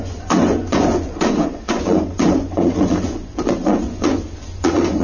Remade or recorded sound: remade